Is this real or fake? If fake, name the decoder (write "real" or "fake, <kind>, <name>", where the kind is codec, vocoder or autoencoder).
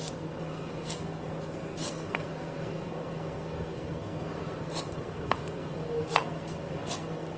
fake, codec, SNAC